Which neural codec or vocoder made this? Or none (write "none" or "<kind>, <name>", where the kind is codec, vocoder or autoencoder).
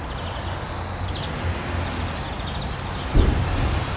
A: none